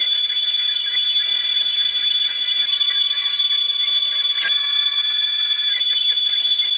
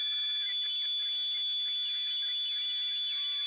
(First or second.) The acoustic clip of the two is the second